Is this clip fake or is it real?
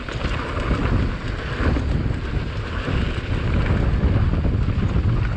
real